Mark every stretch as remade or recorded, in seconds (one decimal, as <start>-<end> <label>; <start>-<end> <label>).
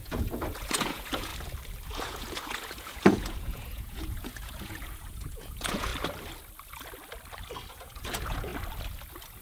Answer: 0.0-1.3 remade; 1.3-1.9 recorded; 1.9-5.9 remade; 5.9-7.7 recorded; 7.7-8.5 remade; 8.5-9.4 recorded